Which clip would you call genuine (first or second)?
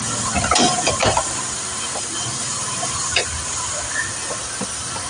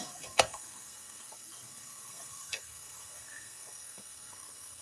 first